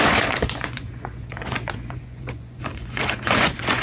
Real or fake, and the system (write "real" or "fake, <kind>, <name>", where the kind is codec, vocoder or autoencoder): fake, vocoder, Vocos